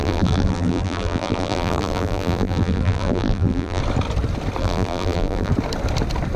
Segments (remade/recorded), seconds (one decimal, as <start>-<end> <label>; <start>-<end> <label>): 0.0-3.8 remade; 3.8-4.6 recorded; 4.6-5.5 remade; 5.5-6.4 recorded